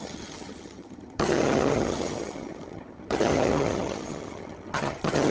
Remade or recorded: remade